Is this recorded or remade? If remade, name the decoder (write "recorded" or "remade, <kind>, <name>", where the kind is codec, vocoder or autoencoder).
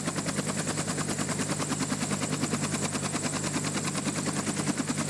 recorded